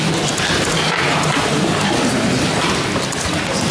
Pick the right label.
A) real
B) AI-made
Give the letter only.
A